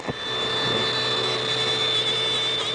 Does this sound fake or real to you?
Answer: real